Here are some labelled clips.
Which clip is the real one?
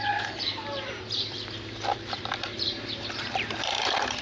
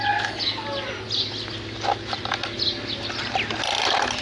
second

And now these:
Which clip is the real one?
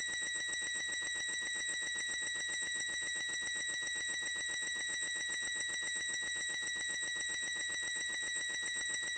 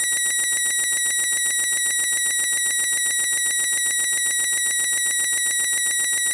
second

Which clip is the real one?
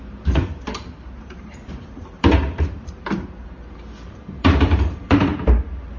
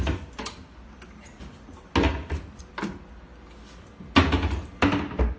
second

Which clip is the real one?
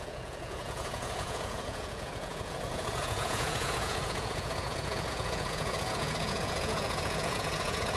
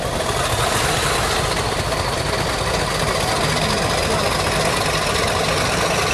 second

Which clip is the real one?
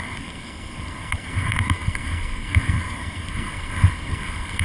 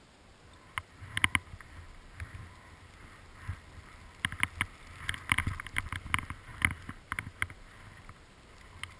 second